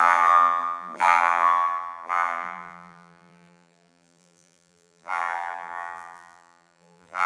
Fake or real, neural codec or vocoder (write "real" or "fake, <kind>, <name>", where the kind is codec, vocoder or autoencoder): fake, vocoder, BigVGAN v2